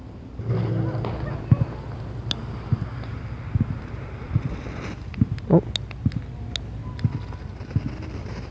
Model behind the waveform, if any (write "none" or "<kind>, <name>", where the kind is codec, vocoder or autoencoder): none